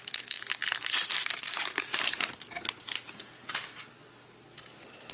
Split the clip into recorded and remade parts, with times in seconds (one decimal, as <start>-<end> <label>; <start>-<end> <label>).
0.0-0.7 recorded; 0.7-3.5 remade; 3.5-5.1 recorded